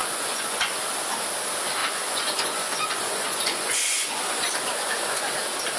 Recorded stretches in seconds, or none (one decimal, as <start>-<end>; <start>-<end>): 0.7-1.8; 5.3-5.8